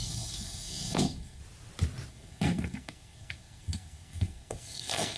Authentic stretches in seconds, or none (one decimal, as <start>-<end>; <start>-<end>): 1.4-2.1